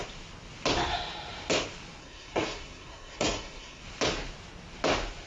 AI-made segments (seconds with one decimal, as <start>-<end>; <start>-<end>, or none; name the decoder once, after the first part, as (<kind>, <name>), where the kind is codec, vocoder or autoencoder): 2.0-3.8 (codec, SNAC)

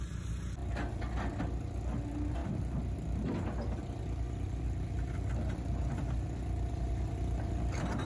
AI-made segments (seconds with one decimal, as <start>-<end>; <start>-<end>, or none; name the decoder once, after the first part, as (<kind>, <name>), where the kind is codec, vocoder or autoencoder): none

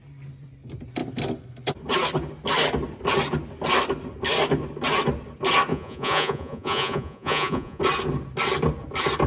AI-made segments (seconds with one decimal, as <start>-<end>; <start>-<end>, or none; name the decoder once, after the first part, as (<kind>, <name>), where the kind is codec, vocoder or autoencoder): 5.7-7.8 (vocoder, Vocos)

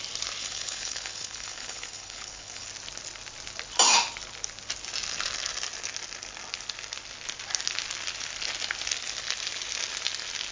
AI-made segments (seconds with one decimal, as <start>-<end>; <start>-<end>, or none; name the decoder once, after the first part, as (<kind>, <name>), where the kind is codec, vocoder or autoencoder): 0.4-2.7 (codec, HILCodec)

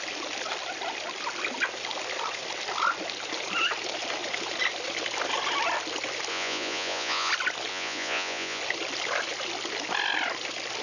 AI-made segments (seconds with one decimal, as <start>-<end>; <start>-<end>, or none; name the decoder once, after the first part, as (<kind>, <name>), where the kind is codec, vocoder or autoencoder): 6.3-7.3 (vocoder, Vocos); 7.7-8.6